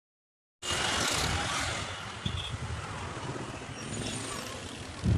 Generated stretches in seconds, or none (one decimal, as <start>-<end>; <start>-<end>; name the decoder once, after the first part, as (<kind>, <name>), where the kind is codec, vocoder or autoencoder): none